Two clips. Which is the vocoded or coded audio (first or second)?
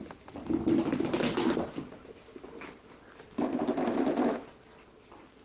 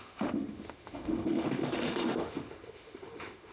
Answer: second